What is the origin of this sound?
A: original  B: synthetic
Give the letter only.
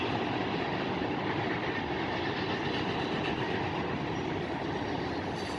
A